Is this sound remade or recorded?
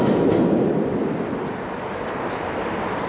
recorded